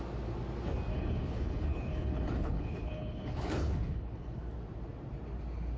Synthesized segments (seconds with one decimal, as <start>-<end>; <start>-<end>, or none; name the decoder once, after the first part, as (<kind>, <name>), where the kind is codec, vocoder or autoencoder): 0.9-4.4 (codec, HILCodec)